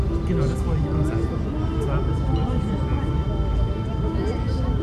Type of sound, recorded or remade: recorded